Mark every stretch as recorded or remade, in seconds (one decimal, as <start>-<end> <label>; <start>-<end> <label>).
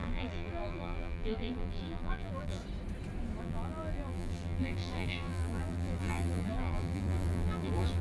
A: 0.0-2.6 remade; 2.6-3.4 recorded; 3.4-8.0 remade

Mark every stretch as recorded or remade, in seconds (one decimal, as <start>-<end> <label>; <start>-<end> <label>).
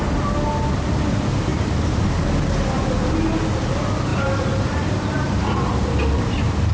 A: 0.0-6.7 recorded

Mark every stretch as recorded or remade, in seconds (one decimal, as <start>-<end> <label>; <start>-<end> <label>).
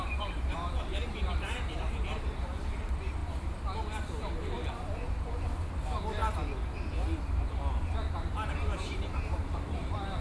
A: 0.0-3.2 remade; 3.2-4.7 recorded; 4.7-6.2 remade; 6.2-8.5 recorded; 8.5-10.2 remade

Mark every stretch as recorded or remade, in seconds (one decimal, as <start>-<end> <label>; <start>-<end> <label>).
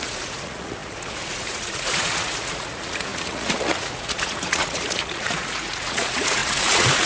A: 0.0-7.1 remade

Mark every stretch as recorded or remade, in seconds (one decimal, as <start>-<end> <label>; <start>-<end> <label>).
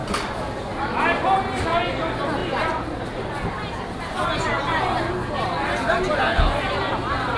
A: 0.0-7.4 recorded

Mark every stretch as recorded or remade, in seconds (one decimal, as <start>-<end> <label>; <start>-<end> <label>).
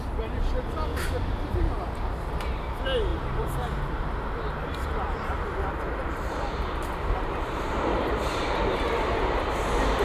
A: 0.0-3.1 recorded; 3.1-4.1 remade; 4.1-6.0 recorded; 6.0-9.6 remade; 9.6-10.0 recorded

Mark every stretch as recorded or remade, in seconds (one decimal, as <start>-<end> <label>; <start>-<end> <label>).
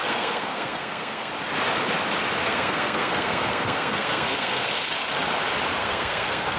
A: 0.0-1.3 remade; 1.3-2.4 recorded; 2.4-4.7 remade; 4.7-5.8 recorded; 5.8-6.6 remade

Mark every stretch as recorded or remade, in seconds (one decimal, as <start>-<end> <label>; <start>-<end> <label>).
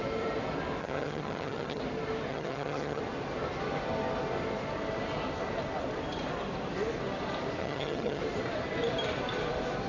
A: 0.0-0.8 recorded; 0.8-1.8 remade; 1.8-2.3 recorded; 2.3-3.0 remade; 3.0-7.6 recorded; 7.6-8.2 remade; 8.2-9.9 recorded